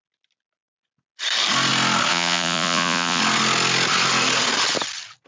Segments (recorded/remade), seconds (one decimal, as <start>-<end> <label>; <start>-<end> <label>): 0.0-2.1 recorded; 2.1-3.2 remade; 3.2-5.3 recorded